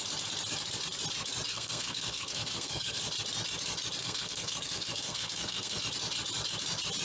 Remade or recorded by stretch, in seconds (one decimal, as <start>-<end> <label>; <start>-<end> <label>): 0.0-1.5 recorded; 1.5-3.0 remade; 3.0-4.0 recorded; 4.0-5.8 remade; 5.8-7.0 recorded